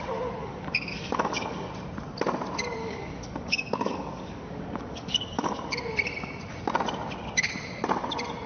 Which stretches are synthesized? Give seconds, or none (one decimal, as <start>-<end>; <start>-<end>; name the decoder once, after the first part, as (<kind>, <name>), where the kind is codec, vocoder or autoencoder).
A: 0.4-1.7 (codec, DAC); 2.8-5.8